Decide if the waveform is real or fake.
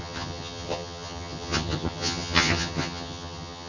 fake